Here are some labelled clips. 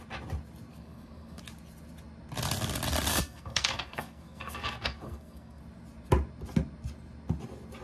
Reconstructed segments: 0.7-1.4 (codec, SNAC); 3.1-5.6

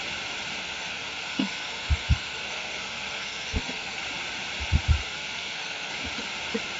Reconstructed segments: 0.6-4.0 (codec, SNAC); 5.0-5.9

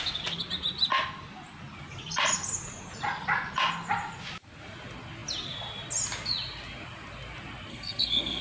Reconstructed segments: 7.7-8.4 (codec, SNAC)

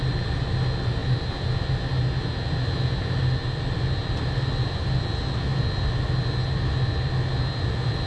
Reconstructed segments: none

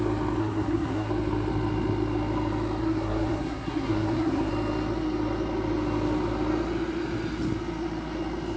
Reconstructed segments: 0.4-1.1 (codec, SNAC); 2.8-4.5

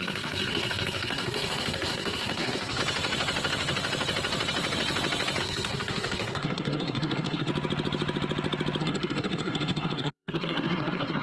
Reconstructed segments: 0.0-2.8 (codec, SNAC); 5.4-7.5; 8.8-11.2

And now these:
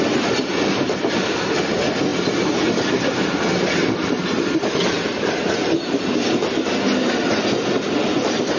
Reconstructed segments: none

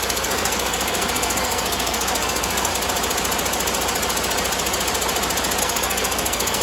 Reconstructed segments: 0.0-2.7 (codec, SNAC); 5.6-6.6